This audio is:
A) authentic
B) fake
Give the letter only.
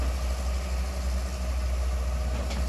A